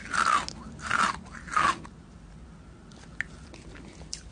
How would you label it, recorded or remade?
recorded